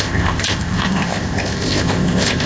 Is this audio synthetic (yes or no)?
yes